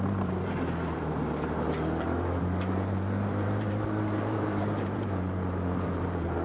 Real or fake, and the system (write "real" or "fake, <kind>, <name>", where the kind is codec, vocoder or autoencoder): fake, vocoder, BigVGAN v2